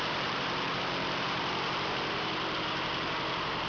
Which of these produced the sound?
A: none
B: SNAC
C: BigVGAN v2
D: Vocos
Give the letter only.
C